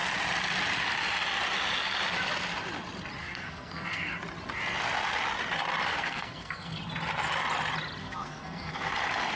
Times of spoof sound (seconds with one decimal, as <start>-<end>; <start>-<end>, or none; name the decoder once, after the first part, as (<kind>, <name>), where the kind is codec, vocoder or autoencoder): 3.2-4.1 (codec, SNAC); 5.9-6.8; 8.0-8.9